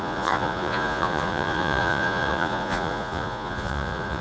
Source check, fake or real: fake